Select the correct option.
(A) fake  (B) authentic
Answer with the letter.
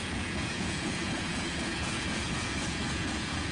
A